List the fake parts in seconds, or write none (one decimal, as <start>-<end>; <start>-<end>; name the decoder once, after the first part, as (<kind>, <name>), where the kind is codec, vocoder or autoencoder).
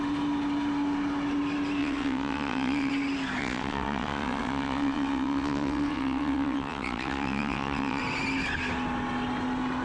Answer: 1.8-2.9 (vocoder, WaveNeXt); 3.4-8.0